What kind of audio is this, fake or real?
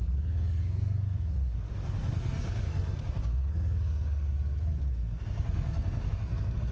fake